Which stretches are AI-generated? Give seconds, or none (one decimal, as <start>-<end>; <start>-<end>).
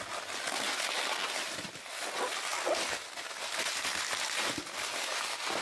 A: none